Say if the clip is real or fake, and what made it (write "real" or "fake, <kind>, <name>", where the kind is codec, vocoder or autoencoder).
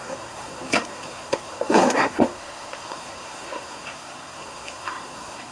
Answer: fake, codec, SNAC